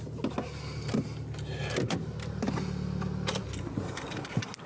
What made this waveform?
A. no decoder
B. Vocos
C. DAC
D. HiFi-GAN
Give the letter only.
A